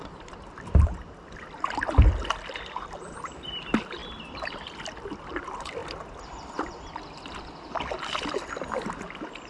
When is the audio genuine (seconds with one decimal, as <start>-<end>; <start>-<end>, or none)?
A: 0.0-9.5